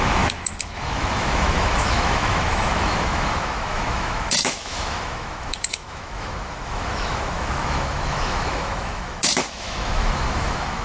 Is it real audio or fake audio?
fake